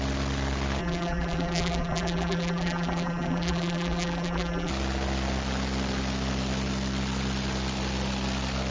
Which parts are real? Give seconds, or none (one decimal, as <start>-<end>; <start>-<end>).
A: 0.0-0.8; 4.7-8.7